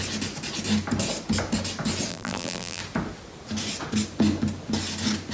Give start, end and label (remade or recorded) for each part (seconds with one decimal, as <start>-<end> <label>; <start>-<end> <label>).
0.0-2.1 recorded; 2.1-2.8 remade; 2.8-5.3 recorded